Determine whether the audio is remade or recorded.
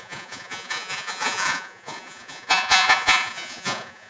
remade